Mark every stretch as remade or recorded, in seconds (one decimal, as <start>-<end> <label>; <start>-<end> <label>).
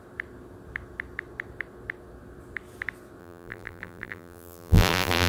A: 0.0-3.2 recorded; 3.2-5.3 remade